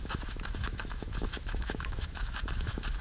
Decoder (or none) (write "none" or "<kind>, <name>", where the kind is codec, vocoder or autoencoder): autoencoder, DAC-VAE